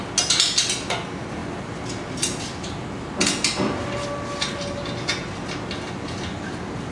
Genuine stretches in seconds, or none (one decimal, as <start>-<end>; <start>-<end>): 0.0-6.9